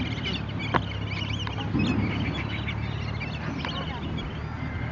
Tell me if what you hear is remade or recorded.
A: recorded